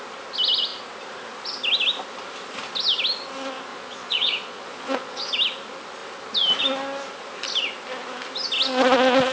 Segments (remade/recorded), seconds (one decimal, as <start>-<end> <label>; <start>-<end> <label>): 0.0-3.7 recorded; 3.7-5.3 remade; 5.3-9.3 recorded